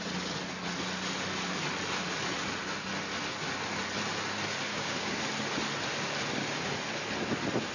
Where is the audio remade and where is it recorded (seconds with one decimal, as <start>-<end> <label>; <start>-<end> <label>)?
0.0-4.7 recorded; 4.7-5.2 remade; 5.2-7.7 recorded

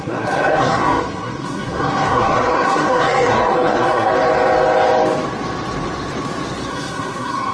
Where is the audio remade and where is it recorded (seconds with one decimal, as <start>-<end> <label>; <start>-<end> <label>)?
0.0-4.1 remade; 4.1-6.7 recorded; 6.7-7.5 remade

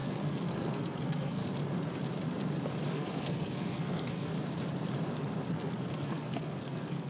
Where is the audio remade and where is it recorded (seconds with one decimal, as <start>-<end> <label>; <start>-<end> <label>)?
0.0-1.4 remade; 1.4-2.9 recorded; 2.9-4.3 remade; 4.3-5.5 recorded; 5.5-7.1 remade

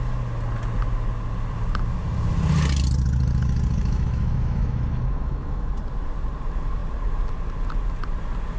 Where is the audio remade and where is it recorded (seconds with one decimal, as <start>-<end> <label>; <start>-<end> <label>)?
0.0-3.8 recorded; 3.8-5.7 remade; 5.7-8.6 recorded

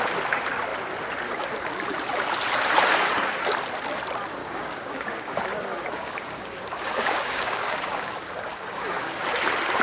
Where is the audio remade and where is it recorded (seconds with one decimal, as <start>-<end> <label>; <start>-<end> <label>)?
0.0-4.4 recorded; 4.4-9.2 remade; 9.2-9.8 recorded